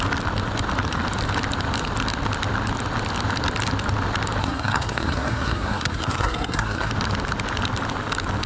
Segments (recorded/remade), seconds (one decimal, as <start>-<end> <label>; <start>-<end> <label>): 0.0-4.4 recorded; 4.4-6.9 remade; 6.9-8.5 recorded